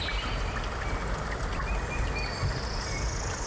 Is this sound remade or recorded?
recorded